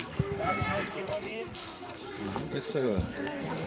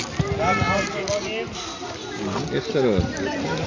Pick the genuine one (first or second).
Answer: second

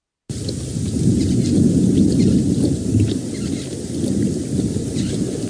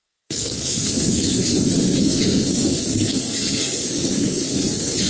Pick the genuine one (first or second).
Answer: first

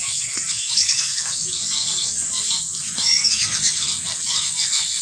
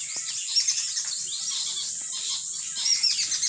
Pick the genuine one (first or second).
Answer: second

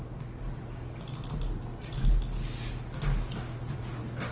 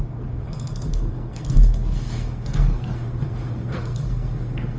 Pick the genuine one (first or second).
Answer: first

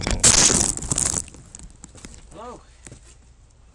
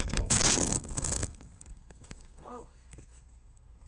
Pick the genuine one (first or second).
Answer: first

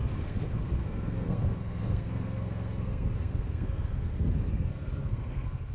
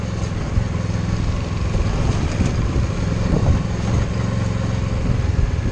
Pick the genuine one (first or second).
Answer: second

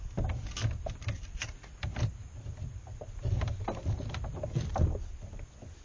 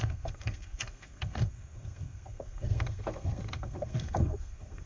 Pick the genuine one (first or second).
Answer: first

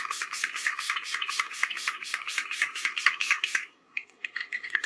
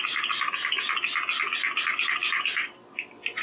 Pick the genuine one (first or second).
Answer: second